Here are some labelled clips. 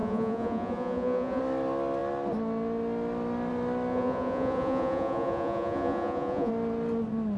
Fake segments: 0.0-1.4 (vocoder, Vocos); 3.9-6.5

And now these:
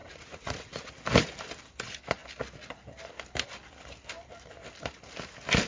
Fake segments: 0.0-0.9 (vocoder, Vocos)

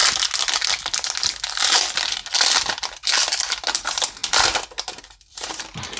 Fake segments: none

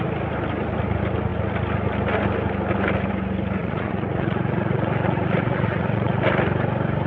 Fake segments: 3.6-6.2 (vocoder, Vocos)